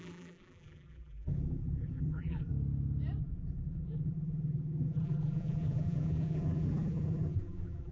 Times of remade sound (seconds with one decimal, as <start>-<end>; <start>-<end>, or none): 0.0-2.5; 3.2-7.9